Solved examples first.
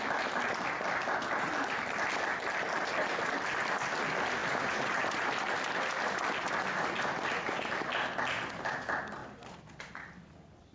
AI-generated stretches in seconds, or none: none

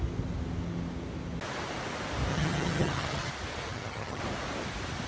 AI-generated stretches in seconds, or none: 2.3-3.3 (vocoder, HiFi-GAN); 3.7-4.2

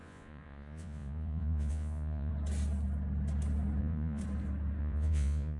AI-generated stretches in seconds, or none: 0.0-2.3 (vocoder, Vocos); 3.8-4.2; 4.8-5.6